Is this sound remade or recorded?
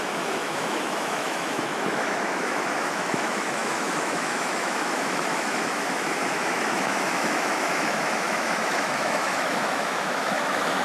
remade